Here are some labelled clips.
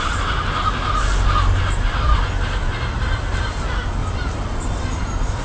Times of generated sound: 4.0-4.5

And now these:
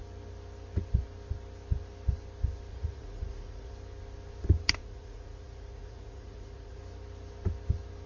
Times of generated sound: 2.7-3.7; 4.8-6.8

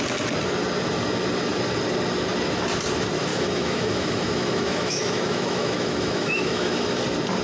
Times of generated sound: 3.3-7.0

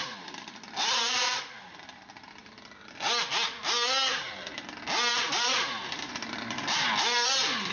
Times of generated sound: 0.0-1.4; 5.1-6.1

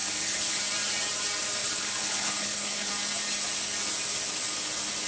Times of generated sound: 0.0-0.6; 1.6-2.9